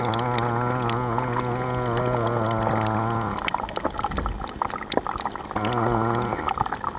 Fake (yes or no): no